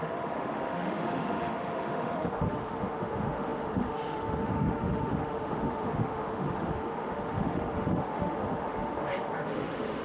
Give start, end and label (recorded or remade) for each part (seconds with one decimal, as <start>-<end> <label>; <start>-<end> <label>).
0.0-10.0 remade